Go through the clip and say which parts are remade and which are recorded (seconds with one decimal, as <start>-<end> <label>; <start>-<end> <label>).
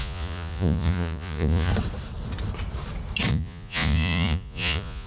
0.0-1.7 remade; 1.7-3.3 recorded; 3.3-5.1 remade